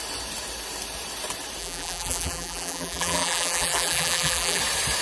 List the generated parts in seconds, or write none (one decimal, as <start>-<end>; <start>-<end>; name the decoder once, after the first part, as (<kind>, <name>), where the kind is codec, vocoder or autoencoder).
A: 1.6-4.6 (vocoder, BigVGAN v2)